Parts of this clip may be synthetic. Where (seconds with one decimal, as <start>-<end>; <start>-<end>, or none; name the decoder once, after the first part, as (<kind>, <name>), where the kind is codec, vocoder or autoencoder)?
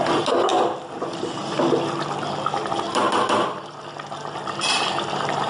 0.0-5.5 (vocoder, BigVGAN v2)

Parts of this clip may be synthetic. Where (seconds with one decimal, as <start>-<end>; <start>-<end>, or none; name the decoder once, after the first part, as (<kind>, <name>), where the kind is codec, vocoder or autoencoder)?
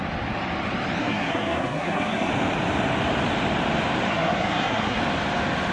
1.0-2.3 (codec, SNAC); 4.1-5.0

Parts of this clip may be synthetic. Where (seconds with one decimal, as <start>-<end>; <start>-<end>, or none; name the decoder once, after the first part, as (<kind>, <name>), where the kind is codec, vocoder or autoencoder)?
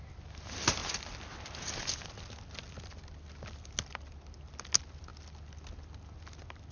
none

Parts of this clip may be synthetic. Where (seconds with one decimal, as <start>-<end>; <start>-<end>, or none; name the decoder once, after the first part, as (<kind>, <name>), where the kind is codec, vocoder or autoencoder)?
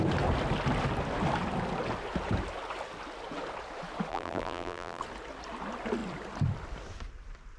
4.1-5.0 (vocoder, BigVGAN v2)